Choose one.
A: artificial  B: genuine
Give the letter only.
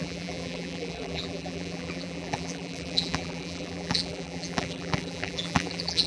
A